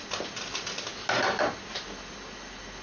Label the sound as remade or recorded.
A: recorded